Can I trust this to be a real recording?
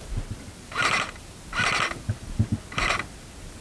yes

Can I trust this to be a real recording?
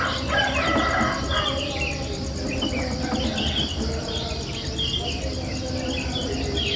yes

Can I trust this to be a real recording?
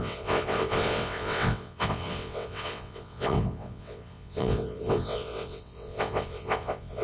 no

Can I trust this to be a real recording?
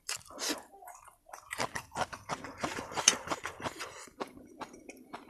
no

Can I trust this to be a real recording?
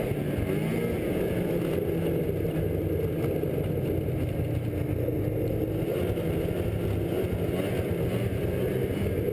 yes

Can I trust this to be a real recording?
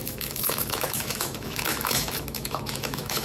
no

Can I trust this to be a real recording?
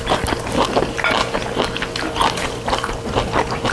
yes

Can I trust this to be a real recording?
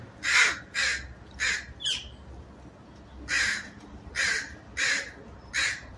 yes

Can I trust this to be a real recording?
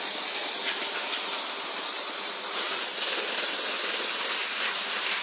no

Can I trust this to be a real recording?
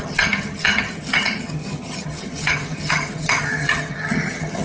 no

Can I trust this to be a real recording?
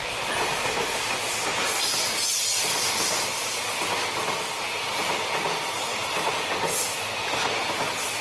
yes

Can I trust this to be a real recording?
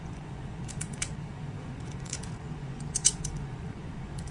no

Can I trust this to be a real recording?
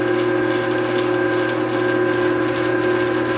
yes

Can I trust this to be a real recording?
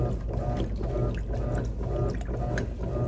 yes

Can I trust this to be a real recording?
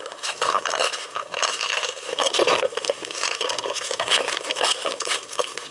no